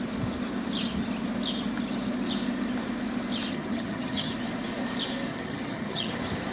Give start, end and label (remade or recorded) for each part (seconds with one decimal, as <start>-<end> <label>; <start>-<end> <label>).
0.0-3.5 recorded; 3.5-4.3 remade; 4.3-5.3 recorded; 5.3-6.1 remade; 6.1-6.5 recorded